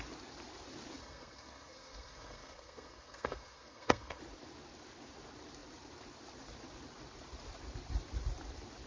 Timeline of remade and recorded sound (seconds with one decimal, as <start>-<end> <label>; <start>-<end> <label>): 0.0-1.0 recorded; 1.0-4.2 remade; 4.2-8.9 recorded